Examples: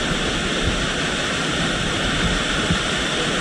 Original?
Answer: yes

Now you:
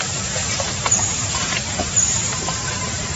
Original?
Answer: no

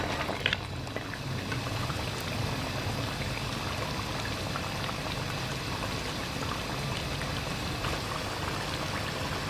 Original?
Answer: yes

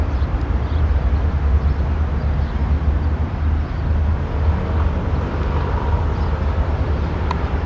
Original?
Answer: yes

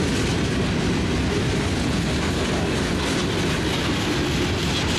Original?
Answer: yes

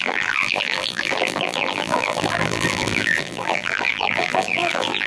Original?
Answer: no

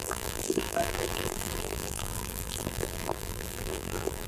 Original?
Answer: no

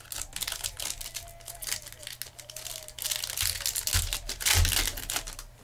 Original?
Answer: yes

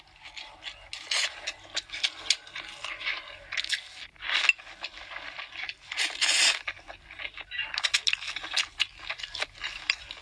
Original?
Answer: yes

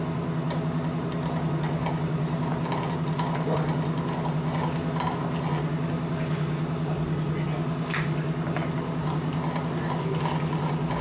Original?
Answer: yes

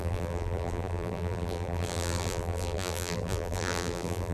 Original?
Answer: no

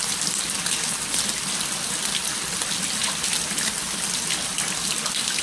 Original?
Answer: yes